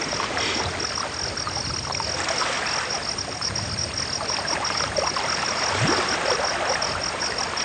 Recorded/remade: recorded